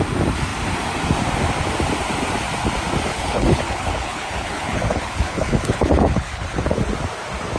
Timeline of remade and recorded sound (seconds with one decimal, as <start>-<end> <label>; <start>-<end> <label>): 0.0-3.1 recorded; 3.1-6.9 remade; 6.9-7.6 recorded